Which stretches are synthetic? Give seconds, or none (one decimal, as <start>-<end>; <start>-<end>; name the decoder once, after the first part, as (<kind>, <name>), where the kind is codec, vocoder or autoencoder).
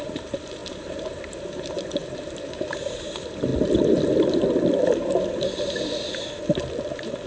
0.0-3.5 (vocoder, BigVGAN v2)